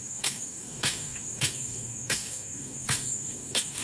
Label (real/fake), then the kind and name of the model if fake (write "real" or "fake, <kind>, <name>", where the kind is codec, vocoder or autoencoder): fake, codec, DAC